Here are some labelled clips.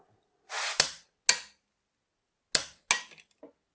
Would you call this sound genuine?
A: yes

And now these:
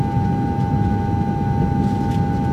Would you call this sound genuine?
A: yes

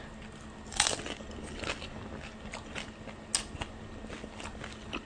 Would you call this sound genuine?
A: yes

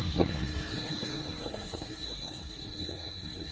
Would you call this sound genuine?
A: no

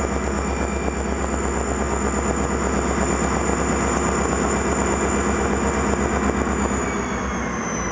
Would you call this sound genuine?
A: yes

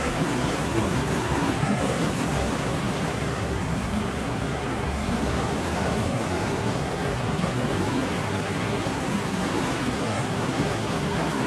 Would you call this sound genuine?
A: no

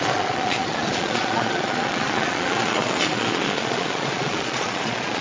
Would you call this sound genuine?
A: no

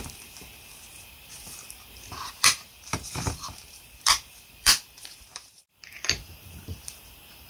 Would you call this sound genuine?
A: no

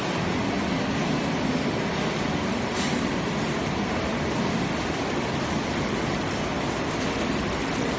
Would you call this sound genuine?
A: yes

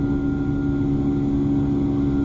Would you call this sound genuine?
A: yes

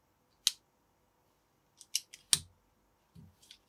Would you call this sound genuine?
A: yes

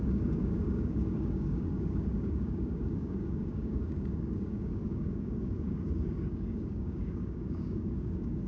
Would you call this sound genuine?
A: no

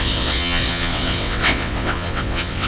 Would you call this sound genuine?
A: no